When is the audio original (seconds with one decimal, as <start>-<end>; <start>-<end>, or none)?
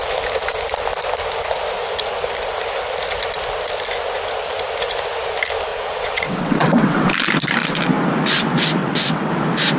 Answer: 0.0-5.7; 7.1-8.8; 9.3-9.8